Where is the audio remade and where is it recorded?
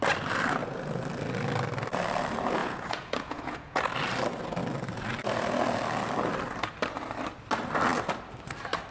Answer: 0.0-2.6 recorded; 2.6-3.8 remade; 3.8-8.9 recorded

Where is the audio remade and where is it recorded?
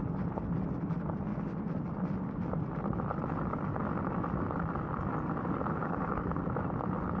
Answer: 0.0-5.8 recorded; 5.8-6.4 remade; 6.4-7.2 recorded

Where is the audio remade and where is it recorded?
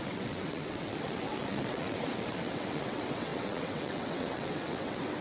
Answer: 0.0-5.2 remade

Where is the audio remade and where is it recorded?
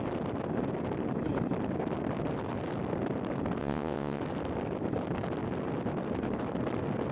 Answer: 0.0-3.6 recorded; 3.6-4.2 remade; 4.2-7.1 recorded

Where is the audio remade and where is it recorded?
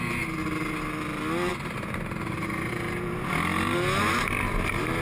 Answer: 0.0-5.0 recorded